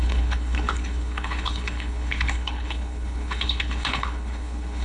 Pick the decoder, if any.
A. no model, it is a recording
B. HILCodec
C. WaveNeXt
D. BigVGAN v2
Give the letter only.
B